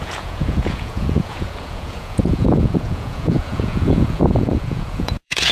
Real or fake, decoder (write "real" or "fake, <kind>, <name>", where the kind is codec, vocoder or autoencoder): fake, vocoder, Vocos